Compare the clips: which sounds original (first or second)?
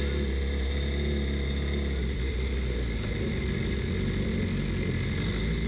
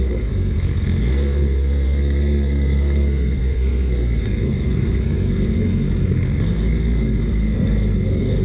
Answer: first